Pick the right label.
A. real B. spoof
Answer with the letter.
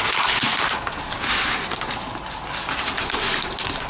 A